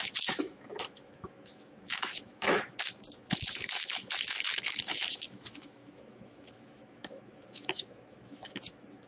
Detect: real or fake fake